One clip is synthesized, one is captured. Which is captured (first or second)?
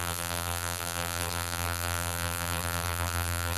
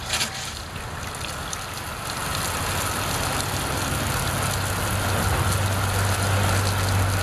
second